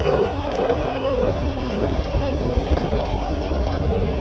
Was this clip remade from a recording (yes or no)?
yes